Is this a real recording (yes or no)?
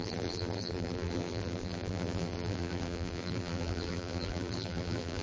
no